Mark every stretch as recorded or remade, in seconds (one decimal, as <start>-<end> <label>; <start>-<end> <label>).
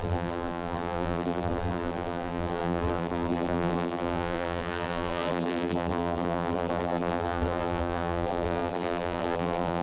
0.0-9.8 remade